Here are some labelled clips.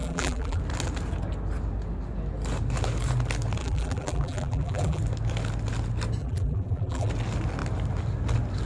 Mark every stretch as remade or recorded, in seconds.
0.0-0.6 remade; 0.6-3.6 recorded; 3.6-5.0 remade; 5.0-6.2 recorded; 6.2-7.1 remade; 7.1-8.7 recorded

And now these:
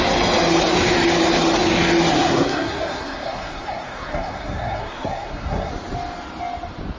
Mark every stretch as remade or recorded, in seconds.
0.0-2.1 recorded; 2.1-5.7 remade; 5.7-7.0 recorded

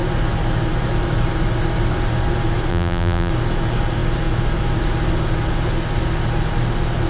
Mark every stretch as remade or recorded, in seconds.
0.0-2.7 recorded; 2.7-3.3 remade; 3.3-7.1 recorded